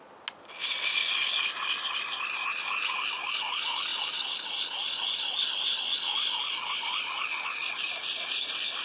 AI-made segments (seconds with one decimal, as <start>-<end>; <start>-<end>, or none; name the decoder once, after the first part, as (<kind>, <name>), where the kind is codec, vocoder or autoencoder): none